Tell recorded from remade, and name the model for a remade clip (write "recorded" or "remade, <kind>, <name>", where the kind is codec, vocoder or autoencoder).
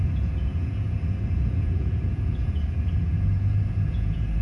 remade, vocoder, Vocos